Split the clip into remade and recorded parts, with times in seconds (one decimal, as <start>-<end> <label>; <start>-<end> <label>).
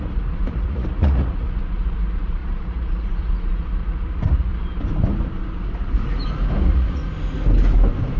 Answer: 0.0-4.5 remade; 4.5-6.6 recorded; 6.6-7.0 remade; 7.0-8.2 recorded